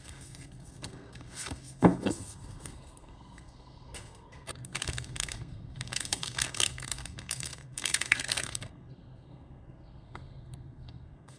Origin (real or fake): fake